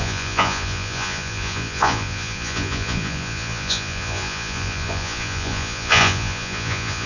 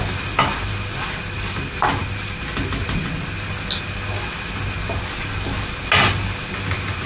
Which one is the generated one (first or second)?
first